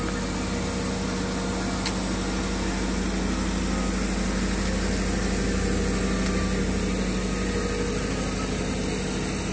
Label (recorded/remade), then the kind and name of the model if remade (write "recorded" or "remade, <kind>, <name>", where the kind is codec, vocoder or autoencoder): recorded